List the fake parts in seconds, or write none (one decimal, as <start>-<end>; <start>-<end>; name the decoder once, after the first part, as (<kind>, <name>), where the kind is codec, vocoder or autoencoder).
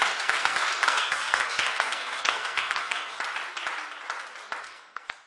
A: 0.0-3.2 (codec, SNAC); 4.6-5.3